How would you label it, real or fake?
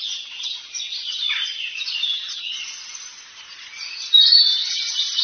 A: real